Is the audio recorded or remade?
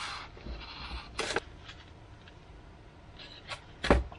recorded